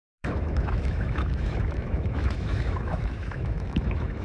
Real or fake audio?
fake